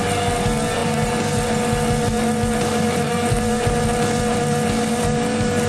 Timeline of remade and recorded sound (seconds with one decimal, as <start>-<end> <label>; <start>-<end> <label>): 0.0-5.7 recorded